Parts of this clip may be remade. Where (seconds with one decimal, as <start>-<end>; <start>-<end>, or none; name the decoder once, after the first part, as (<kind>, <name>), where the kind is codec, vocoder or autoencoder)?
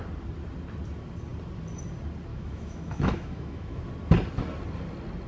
2.3-3.8 (autoencoder, DAC-VAE)